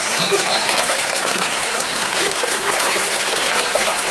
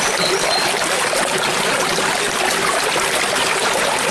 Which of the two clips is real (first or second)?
second